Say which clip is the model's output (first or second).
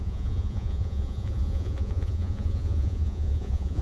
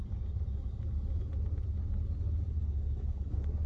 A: first